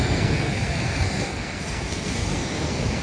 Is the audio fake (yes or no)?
yes